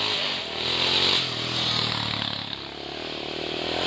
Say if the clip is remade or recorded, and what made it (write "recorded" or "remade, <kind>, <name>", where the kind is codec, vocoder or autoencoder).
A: recorded